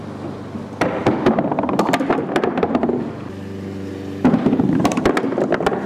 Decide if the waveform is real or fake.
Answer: real